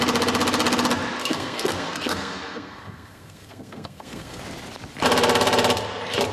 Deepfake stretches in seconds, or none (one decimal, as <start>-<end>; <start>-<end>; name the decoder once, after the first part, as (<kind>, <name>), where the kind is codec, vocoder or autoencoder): 1.2-4.4 (codec, SNAC)